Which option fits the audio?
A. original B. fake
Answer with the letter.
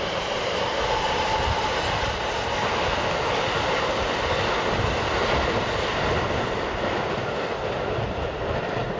A